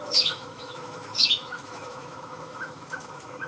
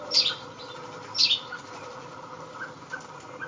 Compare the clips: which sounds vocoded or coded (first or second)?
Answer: first